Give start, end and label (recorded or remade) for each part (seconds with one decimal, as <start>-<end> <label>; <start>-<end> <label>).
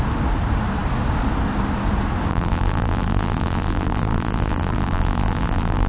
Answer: 0.0-2.3 recorded; 2.3-5.9 remade